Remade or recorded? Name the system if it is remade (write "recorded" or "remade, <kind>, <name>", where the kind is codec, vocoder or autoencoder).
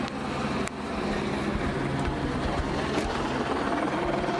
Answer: recorded